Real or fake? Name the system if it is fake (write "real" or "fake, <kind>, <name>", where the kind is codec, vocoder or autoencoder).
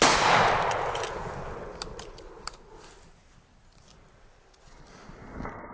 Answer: real